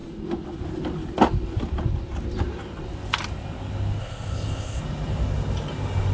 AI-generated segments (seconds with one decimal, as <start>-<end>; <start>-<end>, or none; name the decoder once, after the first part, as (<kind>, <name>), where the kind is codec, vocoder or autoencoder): 4.0-4.8 (codec, ZipCodec)